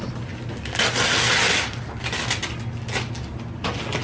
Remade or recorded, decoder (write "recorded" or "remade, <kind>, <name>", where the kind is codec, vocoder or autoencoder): recorded